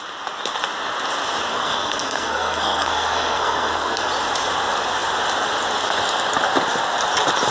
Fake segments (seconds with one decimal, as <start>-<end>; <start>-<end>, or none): 1.5-4.1